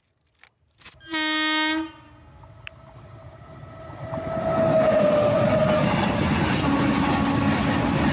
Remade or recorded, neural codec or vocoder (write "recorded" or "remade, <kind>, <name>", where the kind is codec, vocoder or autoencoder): recorded